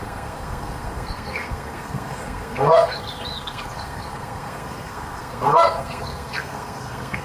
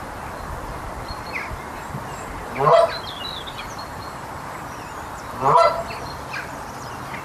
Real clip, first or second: second